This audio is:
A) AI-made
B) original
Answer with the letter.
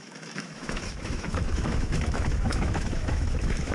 A